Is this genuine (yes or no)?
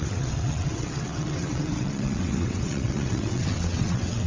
no